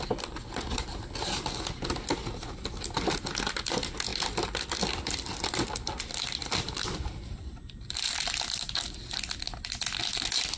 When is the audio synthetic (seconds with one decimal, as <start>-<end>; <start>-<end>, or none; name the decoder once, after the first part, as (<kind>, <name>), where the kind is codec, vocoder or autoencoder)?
4.1-8.4 (vocoder, BigVGAN v2)